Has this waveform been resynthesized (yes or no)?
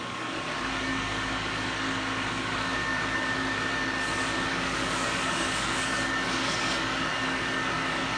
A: yes